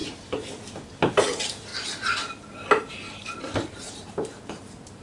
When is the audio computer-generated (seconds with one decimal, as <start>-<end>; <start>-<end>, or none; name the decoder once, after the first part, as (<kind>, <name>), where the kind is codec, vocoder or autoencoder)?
1.1-1.7 (vocoder, BigVGAN v2); 3.9-5.0